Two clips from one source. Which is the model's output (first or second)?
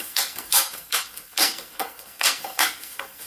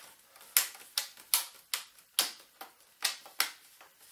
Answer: first